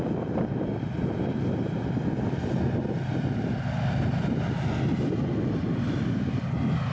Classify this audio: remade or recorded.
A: recorded